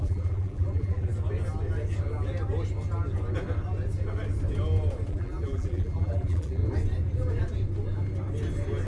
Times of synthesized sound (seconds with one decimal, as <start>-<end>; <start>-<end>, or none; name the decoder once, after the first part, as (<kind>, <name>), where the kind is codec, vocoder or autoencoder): 0.0-1.1 (vocoder, BigVGAN v2); 5.1-6.6